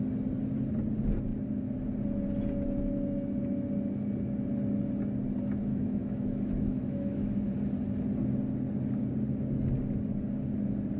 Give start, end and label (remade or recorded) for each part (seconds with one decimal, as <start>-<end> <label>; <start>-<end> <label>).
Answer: 0.0-5.7 recorded; 5.7-7.5 remade; 7.5-11.0 recorded